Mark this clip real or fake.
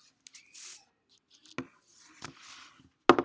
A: real